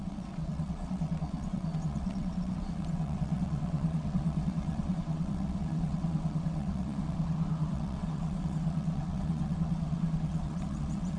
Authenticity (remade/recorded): remade